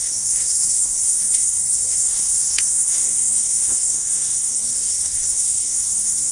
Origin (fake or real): fake